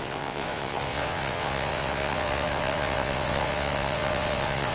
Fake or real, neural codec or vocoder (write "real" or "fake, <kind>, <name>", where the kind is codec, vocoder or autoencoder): fake, vocoder, WaveNeXt